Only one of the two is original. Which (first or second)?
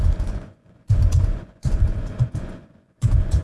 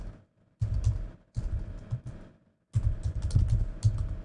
second